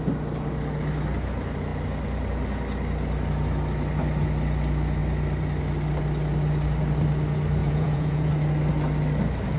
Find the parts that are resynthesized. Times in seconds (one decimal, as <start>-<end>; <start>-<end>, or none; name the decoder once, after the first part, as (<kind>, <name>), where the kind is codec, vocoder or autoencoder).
7.6-8.3 (vocoder, Vocos)